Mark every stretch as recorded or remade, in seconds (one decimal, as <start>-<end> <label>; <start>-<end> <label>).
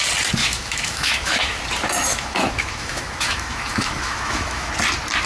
0.0-0.4 recorded; 0.4-1.6 remade; 1.6-2.1 recorded; 2.1-4.7 remade; 4.7-5.3 recorded